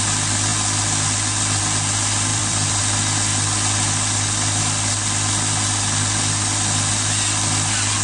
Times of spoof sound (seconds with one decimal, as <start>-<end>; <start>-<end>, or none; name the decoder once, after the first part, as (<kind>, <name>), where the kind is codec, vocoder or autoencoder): 2.3-2.8 (vocoder, BigVGAN v2)